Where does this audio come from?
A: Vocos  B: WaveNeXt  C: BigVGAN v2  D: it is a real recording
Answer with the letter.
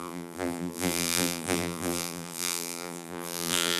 C